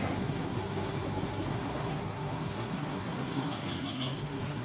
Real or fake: fake